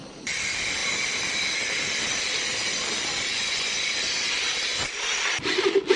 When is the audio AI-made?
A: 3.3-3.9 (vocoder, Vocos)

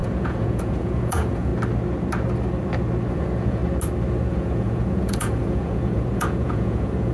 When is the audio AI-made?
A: 0.0-1.5 (vocoder, Vocos); 3.1-3.6; 4.3-7.1

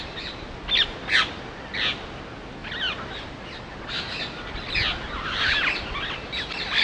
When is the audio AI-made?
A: none

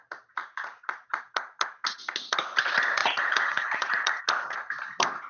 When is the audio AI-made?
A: 0.4-1.2 (vocoder, Vocos); 3.0-4.2